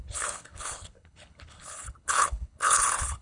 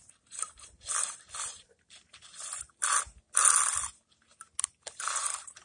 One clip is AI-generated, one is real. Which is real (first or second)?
second